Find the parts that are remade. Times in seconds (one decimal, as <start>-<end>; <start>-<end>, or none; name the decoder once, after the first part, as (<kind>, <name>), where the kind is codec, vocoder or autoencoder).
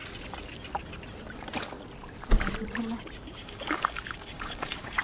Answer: 3.4-5.0 (codec, DAC)